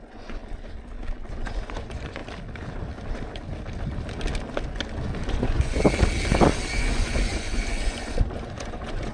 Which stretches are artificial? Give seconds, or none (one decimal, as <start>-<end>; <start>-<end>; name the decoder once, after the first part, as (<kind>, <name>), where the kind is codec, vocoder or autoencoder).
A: 0.0-0.4 (vocoder, Vocos); 1.3-2.2; 5.3-5.8; 6.7-9.1

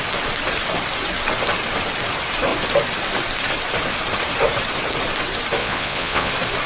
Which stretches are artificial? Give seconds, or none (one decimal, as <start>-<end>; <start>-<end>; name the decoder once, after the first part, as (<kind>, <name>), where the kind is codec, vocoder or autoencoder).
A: 5.6-6.3 (vocoder, Vocos)

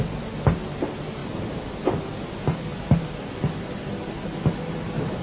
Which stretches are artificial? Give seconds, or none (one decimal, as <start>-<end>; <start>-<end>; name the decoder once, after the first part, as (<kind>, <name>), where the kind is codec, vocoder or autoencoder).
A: none

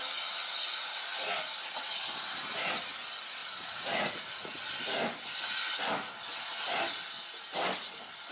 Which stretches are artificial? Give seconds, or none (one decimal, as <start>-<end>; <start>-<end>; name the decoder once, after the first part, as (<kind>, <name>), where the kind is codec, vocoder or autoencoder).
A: 3.4-4.6 (vocoder, Vocos)

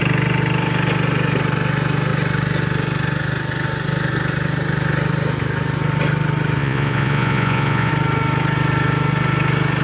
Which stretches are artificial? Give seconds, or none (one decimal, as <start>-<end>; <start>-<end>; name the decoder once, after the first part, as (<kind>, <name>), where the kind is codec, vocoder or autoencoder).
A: 6.6-7.9 (vocoder, Vocos)